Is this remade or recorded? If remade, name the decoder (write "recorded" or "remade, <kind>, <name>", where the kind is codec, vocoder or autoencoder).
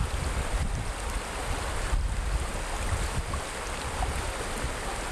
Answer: recorded